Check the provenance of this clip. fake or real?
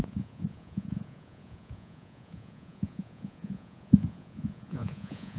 fake